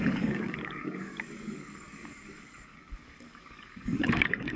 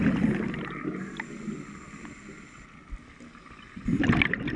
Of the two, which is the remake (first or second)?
first